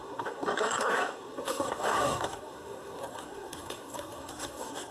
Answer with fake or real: fake